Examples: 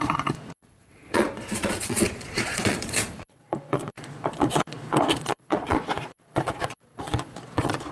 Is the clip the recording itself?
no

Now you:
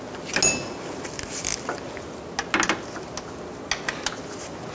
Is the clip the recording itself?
yes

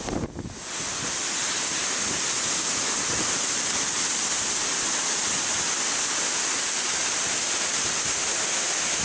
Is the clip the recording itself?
yes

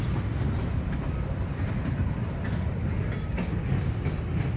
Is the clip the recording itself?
yes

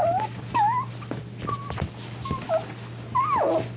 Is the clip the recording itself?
yes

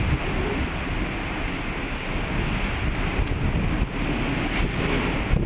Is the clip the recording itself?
yes